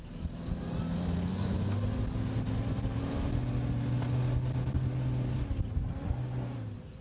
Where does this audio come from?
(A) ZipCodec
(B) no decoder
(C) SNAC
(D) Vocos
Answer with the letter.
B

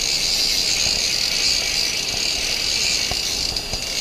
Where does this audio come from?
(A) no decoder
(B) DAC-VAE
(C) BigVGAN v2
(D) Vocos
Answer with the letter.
A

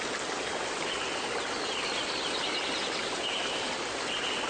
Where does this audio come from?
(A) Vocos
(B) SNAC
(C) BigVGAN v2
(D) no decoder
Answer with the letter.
D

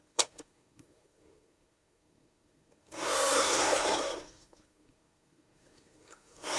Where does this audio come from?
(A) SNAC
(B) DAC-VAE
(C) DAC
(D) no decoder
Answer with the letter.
A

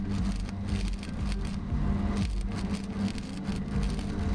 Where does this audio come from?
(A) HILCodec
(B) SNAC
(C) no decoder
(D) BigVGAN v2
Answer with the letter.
C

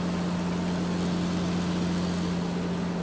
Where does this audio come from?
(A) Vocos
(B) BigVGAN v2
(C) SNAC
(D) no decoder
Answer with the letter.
D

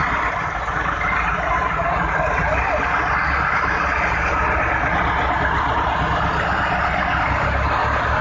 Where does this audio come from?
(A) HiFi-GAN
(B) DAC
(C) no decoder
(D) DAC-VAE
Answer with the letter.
C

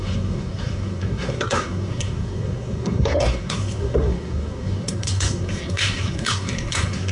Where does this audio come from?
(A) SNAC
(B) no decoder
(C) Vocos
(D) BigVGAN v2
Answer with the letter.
A